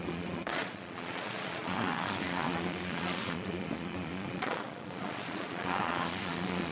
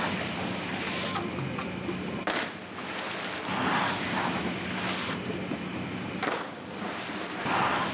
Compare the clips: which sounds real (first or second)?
second